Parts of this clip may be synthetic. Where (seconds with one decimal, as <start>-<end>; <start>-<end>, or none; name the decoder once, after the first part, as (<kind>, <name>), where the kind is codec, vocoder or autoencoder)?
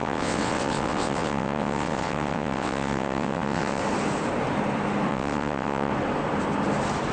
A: 0.0-3.8 (vocoder, WaveNeXt); 5.1-5.9